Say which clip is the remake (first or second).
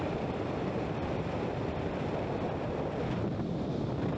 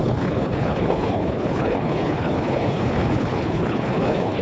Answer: second